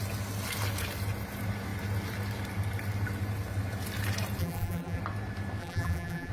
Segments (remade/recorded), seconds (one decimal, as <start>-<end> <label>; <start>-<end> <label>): 0.0-4.4 recorded; 4.4-5.0 remade; 5.0-5.6 recorded; 5.6-6.3 remade